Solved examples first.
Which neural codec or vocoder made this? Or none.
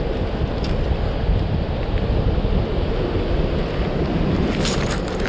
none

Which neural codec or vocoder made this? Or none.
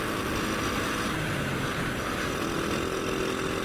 none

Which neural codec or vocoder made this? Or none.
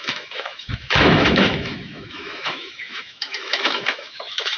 autoencoder, DAC-VAE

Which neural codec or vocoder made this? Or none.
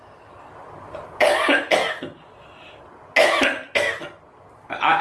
none